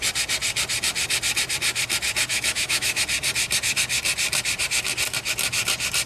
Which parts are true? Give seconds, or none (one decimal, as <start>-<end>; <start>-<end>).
0.0-2.3; 3.0-6.1